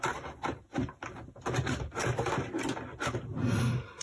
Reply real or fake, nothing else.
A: real